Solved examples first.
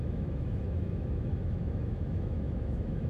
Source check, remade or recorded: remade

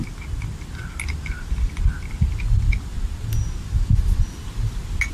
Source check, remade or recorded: recorded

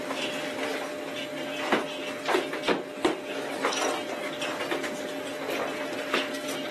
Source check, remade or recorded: recorded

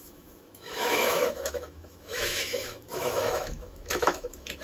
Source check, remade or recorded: remade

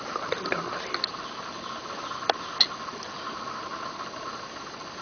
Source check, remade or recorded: recorded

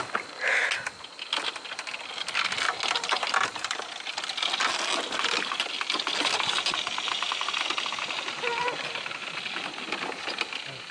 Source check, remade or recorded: recorded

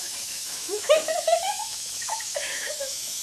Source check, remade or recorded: remade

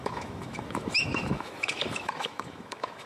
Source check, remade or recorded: remade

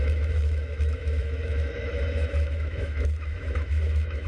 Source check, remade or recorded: remade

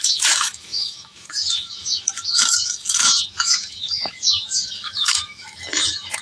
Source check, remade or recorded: remade